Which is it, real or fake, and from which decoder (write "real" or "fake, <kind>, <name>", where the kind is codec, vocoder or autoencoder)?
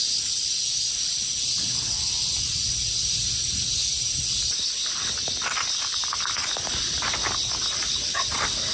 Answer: real